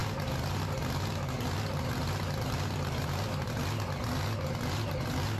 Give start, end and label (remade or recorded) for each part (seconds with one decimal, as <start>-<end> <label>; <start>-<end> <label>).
0.0-5.4 recorded